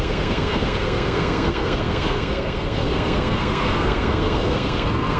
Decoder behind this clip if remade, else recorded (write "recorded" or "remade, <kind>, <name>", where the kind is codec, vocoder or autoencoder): remade, codec, SNAC